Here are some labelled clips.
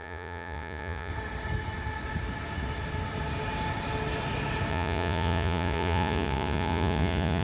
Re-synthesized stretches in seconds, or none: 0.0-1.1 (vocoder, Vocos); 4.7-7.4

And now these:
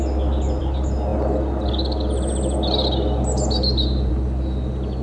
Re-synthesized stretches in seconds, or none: none

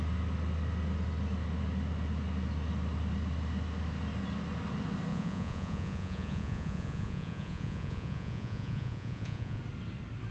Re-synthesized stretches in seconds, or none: 5.1-9.6 (vocoder, Vocos)

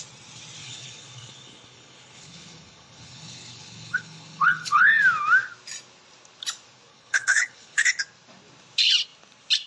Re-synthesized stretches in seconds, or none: 0.6-5.0 (codec, HILCodec); 6.9-8.0

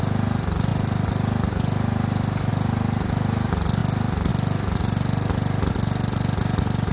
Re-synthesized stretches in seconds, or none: none

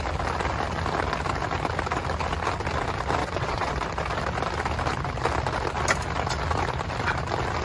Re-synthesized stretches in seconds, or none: 3.2-3.7 (vocoder, WaveNeXt)

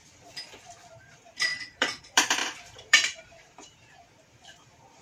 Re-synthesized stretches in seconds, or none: 0.9-5.0 (vocoder, BigVGAN v2)